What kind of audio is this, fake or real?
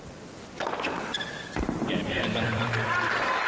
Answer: fake